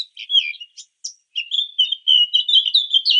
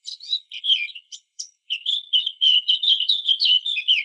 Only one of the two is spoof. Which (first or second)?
second